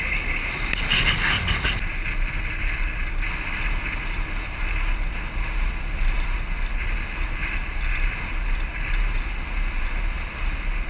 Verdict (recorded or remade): recorded